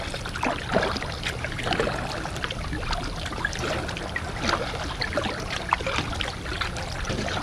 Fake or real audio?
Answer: real